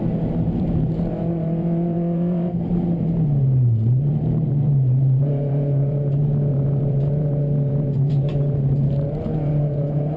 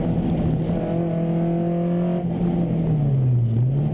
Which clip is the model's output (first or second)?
first